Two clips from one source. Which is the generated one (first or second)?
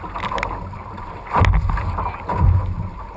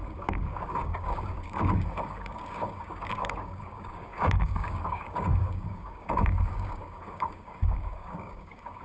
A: second